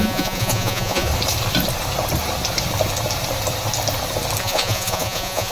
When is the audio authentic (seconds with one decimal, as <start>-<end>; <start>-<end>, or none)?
1.1-4.4